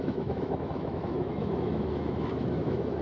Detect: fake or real fake